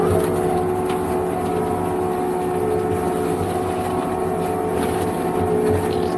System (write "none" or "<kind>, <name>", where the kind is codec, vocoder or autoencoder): none